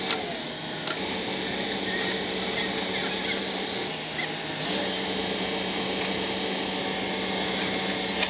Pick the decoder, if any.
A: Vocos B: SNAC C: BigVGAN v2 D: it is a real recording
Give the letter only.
D